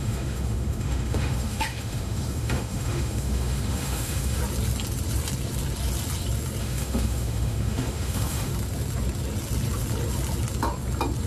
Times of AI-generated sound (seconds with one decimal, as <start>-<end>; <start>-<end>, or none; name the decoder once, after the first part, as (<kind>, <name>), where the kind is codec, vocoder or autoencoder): 0.0-4.4 (autoencoder, DAC-VAE); 6.6-8.5